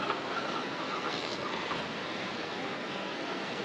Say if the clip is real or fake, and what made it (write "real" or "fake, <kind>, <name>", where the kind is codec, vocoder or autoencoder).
fake, codec, SNAC